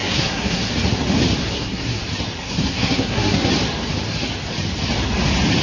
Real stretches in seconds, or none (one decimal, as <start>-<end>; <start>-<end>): 0.7-1.4; 2.0-2.4; 3.5-5.6